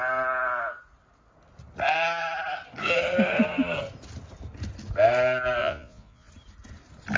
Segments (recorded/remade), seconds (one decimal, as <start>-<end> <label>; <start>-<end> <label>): 0.0-5.6 recorded; 5.6-6.3 remade; 6.3-7.2 recorded